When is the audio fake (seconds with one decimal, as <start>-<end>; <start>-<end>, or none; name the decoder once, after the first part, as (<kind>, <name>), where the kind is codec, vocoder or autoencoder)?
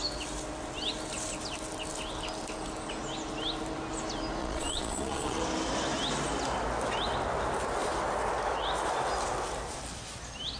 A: 4.4-5.4 (vocoder, Vocos)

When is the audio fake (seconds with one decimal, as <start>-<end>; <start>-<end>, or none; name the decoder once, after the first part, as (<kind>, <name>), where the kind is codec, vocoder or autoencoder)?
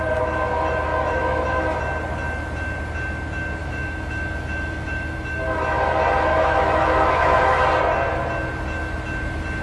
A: 0.9-1.8 (autoencoder, DAC-VAE); 3.6-5.6; 6.3-7.6